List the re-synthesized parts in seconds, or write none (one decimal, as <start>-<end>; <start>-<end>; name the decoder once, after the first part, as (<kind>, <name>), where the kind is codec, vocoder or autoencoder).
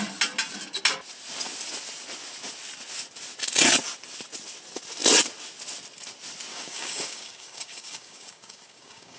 6.5-9.2 (codec, DAC)